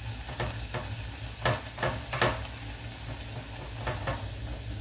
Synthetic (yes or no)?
no